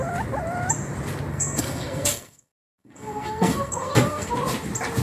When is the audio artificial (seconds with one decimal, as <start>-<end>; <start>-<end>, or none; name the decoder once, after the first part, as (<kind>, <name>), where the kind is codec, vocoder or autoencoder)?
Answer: 1.3-4.3 (codec, SNAC)